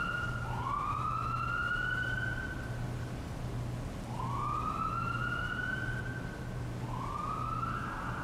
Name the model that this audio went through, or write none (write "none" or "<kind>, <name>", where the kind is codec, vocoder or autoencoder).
none